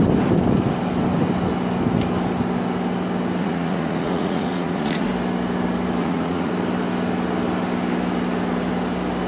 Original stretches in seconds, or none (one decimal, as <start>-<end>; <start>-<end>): 0.0-3.4; 5.1-6.0; 6.5-9.3